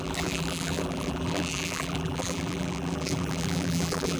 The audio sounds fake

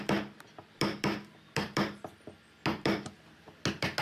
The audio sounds real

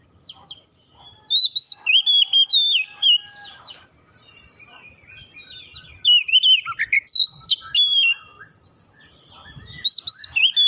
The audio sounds real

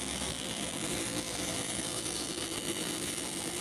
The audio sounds fake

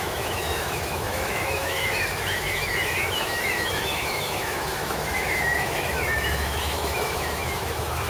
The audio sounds fake